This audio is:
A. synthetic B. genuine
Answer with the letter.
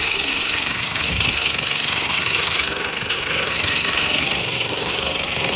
A